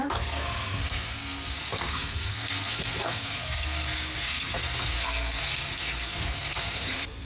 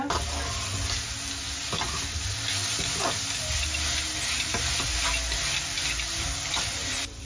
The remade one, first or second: first